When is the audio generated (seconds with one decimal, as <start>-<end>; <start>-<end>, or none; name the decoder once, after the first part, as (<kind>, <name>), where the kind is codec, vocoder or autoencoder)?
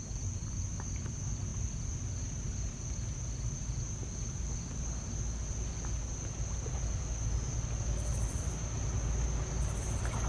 none